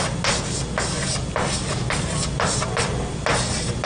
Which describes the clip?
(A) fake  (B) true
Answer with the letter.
B